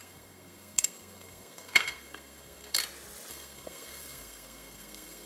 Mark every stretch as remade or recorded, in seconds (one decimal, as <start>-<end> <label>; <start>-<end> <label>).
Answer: 0.0-2.8 remade; 2.8-3.3 recorded; 3.3-5.3 remade